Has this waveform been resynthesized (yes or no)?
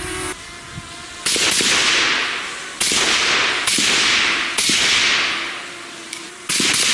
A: no